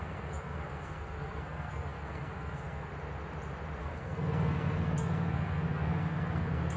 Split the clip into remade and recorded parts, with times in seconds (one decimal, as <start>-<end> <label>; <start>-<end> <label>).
0.0-2.9 remade; 2.9-3.8 recorded; 3.8-6.8 remade